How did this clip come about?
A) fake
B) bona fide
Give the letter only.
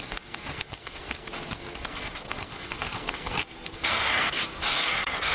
A